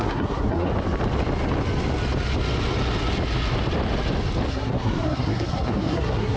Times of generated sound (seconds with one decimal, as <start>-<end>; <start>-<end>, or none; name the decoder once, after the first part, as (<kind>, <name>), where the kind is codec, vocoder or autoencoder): 0.0-0.7 (codec, SNAC); 4.5-6.4